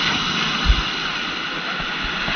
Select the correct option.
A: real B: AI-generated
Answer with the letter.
A